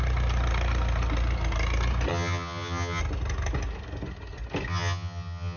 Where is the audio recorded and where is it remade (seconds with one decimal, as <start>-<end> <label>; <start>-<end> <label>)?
0.0-2.1 recorded; 2.1-3.0 remade; 3.0-4.7 recorded; 4.7-5.6 remade